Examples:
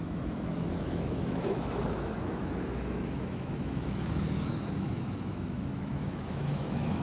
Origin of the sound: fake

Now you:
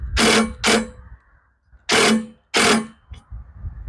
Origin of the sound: real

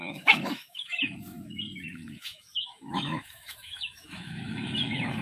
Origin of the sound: fake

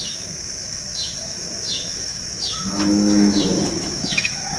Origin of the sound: fake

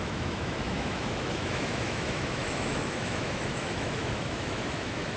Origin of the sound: fake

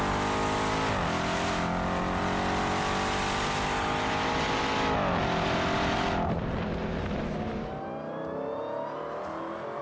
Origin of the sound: real